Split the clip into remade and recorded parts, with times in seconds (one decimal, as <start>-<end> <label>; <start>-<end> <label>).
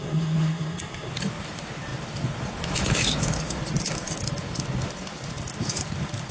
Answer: 0.0-1.1 remade; 1.1-6.3 recorded